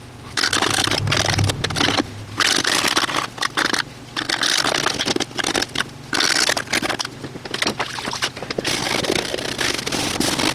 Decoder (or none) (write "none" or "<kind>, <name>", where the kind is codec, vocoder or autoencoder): none